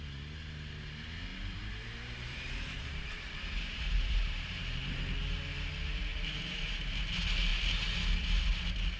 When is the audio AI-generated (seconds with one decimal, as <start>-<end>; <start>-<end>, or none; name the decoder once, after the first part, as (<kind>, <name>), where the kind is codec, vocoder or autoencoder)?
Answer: 1.3-4.9 (vocoder, BigVGAN v2); 6.1-7.0